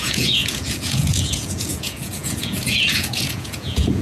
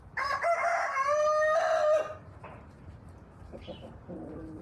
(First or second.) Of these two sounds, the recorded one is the second